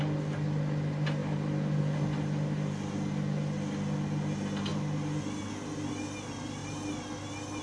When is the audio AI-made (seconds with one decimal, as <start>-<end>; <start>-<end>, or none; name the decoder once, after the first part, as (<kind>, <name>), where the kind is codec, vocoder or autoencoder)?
none

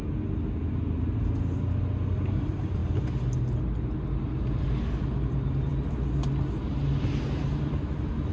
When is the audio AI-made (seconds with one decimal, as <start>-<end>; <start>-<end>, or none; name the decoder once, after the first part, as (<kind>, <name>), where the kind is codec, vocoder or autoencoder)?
none

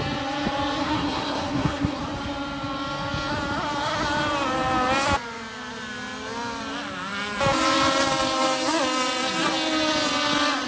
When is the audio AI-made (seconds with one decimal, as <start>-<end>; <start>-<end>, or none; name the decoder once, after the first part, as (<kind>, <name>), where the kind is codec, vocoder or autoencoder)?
0.8-2.0 (codec, SNAC)

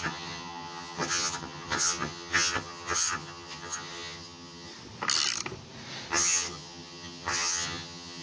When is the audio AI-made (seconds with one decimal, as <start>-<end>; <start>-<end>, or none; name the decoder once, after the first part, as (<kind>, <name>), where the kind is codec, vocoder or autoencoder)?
0.0-4.7 (vocoder, HiFi-GAN); 6.1-8.2